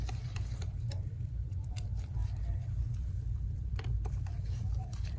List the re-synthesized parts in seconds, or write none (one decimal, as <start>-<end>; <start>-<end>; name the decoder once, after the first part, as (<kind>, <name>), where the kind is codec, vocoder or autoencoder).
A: 0.0-5.2 (vocoder, BigVGAN v2)